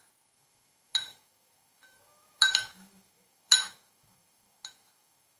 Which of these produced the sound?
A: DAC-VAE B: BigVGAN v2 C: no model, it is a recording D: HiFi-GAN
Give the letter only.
A